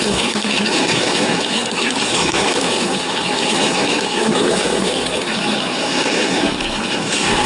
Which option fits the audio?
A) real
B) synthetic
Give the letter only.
B